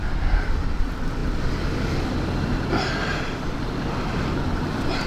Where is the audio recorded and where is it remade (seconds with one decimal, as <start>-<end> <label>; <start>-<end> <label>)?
0.0-5.1 recorded